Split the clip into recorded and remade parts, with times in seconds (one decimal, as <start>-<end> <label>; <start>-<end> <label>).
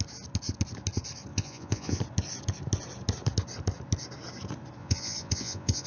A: 0.0-1.3 recorded; 1.3-2.0 remade; 2.0-4.8 recorded; 4.8-5.9 remade